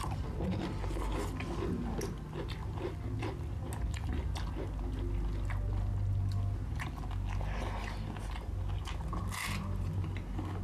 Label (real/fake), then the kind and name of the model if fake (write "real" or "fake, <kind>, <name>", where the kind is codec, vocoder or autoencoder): real